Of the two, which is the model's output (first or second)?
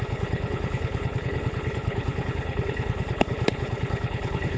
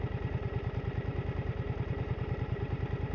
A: first